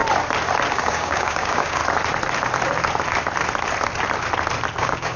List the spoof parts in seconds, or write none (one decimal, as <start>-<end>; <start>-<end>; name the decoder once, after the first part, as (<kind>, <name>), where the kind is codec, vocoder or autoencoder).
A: 0.7-1.8 (codec, DAC); 4.8-5.2